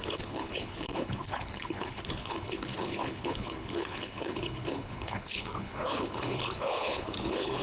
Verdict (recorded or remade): remade